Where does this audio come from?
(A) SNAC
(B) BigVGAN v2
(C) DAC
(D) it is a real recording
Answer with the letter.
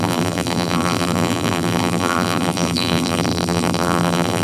B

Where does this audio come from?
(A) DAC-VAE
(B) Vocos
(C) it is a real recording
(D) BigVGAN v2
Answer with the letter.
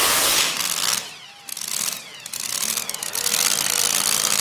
C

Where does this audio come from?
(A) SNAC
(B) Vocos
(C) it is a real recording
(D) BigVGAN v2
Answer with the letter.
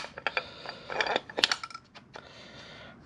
C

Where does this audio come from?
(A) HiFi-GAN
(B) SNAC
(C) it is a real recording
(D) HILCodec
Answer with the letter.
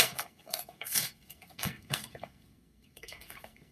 B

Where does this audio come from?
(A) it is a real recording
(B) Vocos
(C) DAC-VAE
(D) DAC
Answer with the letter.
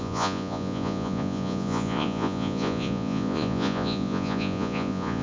B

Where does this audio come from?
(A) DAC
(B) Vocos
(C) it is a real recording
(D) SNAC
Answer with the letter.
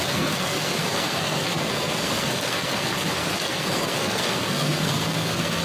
D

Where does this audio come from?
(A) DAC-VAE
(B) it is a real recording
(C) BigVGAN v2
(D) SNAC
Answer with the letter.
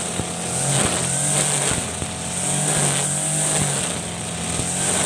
B